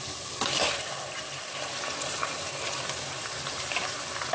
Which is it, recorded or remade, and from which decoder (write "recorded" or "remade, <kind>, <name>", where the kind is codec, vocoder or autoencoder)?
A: recorded